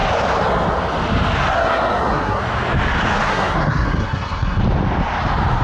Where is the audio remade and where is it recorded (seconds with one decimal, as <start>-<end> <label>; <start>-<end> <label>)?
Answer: 0.0-1.6 recorded; 1.6-2.4 remade; 2.4-3.3 recorded; 3.3-4.6 remade; 4.6-5.6 recorded